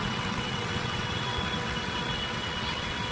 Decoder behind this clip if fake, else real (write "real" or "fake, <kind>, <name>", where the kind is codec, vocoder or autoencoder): fake, vocoder, WaveNeXt